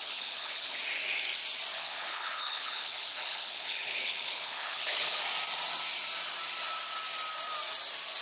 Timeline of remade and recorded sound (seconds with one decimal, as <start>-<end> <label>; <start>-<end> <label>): 0.0-0.8 remade; 0.8-1.7 recorded; 1.7-5.2 remade; 5.2-8.2 recorded